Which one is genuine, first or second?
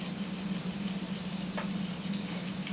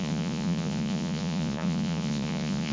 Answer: first